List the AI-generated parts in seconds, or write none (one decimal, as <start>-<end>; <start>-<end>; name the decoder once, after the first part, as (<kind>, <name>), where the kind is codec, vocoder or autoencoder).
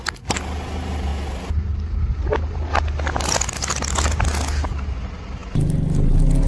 none